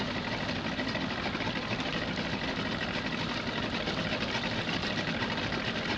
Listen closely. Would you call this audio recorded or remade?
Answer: recorded